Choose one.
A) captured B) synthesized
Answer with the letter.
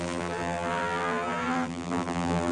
B